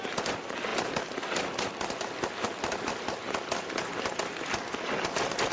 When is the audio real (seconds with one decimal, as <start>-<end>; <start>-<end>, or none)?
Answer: 0.0-5.5